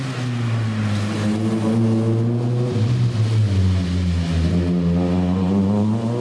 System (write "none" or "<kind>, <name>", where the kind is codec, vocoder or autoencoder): none